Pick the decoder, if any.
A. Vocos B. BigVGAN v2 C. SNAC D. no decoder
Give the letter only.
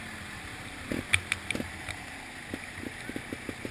D